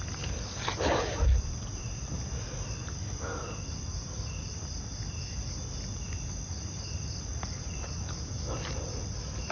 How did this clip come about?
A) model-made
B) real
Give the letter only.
B